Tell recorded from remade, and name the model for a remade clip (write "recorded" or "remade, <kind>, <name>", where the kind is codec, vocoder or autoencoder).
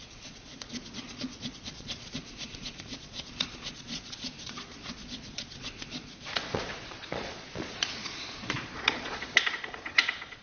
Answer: remade, vocoder, Vocos